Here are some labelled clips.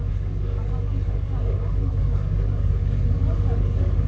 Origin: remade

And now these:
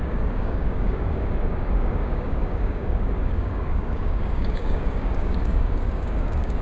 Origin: remade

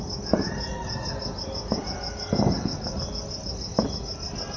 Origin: recorded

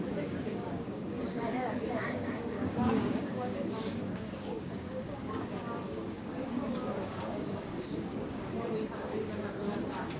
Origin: remade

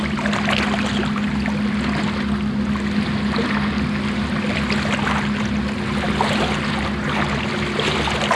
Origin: recorded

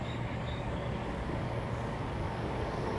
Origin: remade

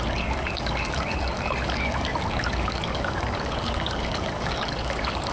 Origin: remade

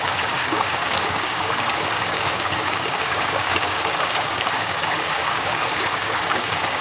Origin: remade